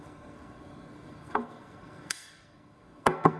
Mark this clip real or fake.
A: fake